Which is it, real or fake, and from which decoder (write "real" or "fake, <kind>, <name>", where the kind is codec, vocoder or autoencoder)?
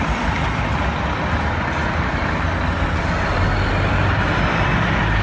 real